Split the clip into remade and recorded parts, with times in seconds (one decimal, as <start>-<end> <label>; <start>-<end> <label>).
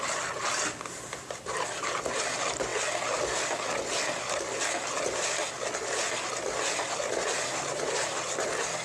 0.0-8.8 recorded